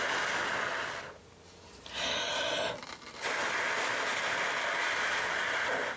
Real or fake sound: real